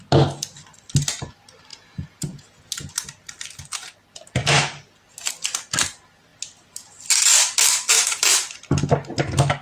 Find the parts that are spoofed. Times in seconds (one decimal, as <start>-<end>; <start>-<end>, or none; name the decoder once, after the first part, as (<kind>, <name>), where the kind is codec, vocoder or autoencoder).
1.7-2.9 (vocoder, Vocos)